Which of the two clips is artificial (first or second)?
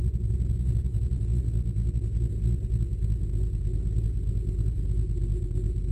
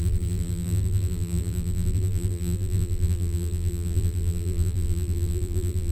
second